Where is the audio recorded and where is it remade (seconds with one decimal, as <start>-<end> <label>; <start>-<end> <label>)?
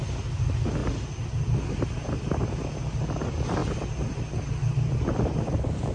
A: 0.0-5.9 recorded